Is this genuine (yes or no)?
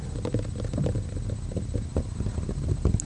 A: yes